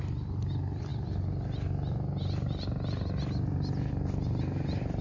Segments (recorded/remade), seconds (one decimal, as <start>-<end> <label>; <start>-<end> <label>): 0.0-5.0 recorded